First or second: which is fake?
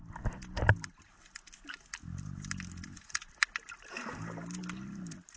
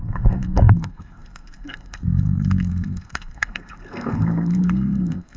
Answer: second